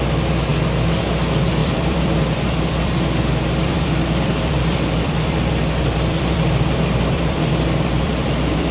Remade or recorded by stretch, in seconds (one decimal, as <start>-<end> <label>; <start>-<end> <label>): 0.0-1.6 recorded; 1.6-3.2 remade; 3.2-3.6 recorded; 3.6-8.7 remade